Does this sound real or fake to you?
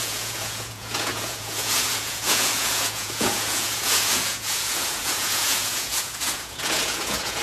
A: fake